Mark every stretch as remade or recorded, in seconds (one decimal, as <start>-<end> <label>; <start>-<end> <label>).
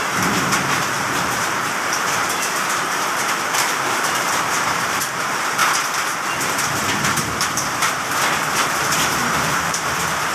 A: 0.0-5.6 remade; 5.6-6.9 recorded; 6.9-10.3 remade